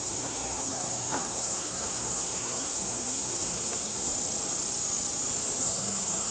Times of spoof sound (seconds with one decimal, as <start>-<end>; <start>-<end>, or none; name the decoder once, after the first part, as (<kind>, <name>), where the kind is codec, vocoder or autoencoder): 0.0-4.1 (codec, SNAC); 5.6-6.3